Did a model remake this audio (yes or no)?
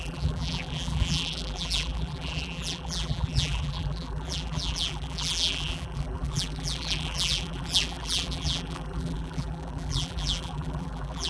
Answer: yes